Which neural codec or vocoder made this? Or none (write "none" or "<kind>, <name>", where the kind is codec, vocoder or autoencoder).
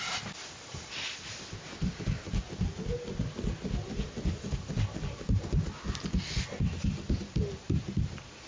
none